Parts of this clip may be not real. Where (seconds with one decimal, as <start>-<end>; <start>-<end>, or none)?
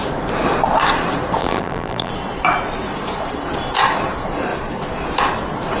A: 1.4-2.1